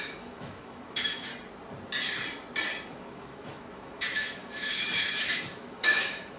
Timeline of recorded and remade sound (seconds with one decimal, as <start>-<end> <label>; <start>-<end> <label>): 0.0-1.3 remade; 1.3-2.9 recorded; 2.9-6.4 remade